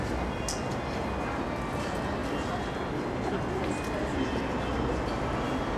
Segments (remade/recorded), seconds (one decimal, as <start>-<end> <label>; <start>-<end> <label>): 0.0-5.8 recorded